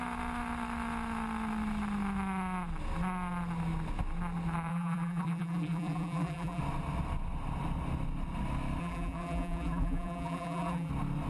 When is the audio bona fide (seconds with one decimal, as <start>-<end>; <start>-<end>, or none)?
0.0-4.7; 6.6-8.8; 10.9-11.3